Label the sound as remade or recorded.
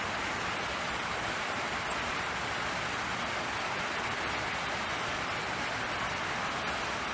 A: recorded